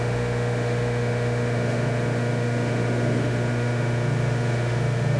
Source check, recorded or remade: remade